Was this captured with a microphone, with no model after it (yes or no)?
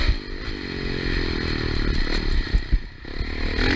yes